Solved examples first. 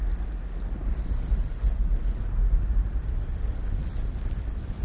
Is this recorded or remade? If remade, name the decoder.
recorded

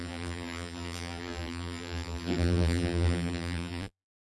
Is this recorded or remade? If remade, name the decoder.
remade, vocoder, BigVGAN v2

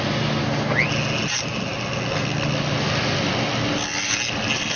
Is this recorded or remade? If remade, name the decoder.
recorded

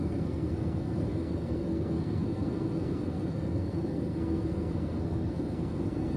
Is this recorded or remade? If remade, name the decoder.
remade, codec, SNAC